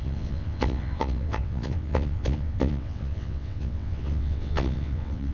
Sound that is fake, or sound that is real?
fake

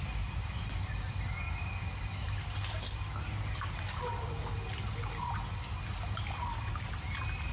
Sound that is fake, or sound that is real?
real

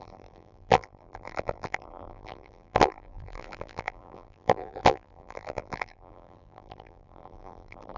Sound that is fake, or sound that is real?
fake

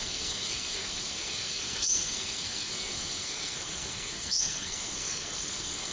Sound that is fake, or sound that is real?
fake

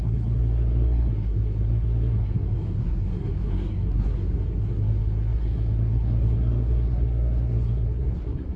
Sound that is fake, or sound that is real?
fake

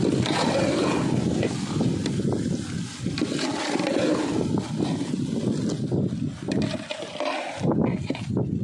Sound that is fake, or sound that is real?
real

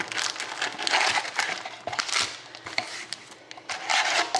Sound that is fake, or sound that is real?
real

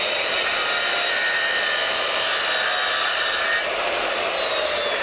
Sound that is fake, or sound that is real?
real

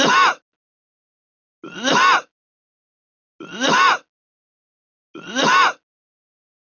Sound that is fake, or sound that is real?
real